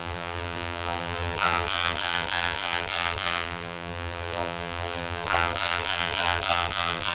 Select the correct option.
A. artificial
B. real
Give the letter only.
A